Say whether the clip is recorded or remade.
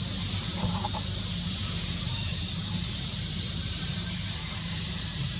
remade